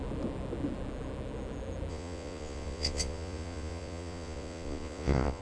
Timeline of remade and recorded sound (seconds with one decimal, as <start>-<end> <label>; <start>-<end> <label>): 0.0-1.9 recorded; 1.9-5.4 remade